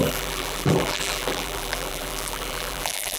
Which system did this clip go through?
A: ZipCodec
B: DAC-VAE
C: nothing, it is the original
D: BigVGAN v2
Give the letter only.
D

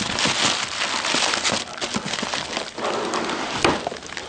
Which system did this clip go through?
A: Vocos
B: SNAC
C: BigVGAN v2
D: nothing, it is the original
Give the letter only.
D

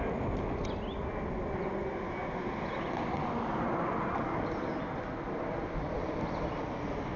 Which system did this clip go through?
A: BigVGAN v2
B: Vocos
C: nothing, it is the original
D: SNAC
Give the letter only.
C